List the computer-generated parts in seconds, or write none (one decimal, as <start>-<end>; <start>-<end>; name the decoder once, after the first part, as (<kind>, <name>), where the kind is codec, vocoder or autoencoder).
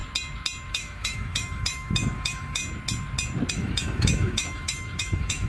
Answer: 0.7-2.6 (autoencoder, DAC-VAE); 3.5-5.5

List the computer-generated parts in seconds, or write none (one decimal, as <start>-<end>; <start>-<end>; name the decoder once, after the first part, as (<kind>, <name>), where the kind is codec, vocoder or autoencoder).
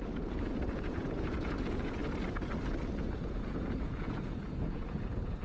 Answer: 0.0-2.0 (vocoder, Vocos); 3.0-5.4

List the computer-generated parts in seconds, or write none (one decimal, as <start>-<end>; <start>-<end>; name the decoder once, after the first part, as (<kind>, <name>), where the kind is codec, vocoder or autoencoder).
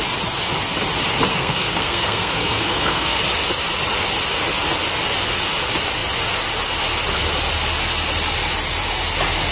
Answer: 1.3-3.2 (codec, SNAC)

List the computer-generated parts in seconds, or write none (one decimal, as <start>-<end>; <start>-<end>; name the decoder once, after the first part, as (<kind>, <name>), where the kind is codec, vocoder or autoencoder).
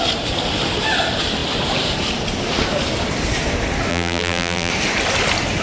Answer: 3.9-4.7 (vocoder, BigVGAN v2)